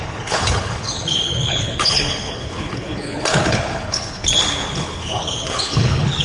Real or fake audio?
fake